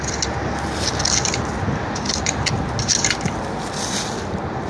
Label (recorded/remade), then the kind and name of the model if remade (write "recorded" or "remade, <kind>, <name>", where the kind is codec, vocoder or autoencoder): recorded